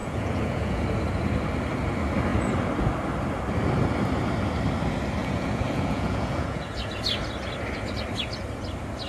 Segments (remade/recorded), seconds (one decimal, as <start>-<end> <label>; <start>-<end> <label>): 0.0-0.8 remade; 0.8-5.2 recorded; 5.2-7.0 remade; 7.0-9.1 recorded